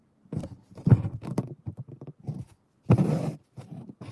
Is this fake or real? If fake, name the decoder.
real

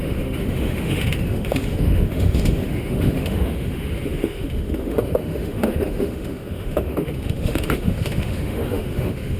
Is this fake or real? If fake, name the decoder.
fake, autoencoder, DAC-VAE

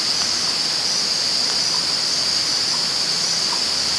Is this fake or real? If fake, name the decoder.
real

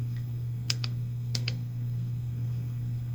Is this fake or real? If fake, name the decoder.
fake, codec, SNAC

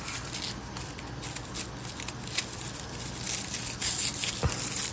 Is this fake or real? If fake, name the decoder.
real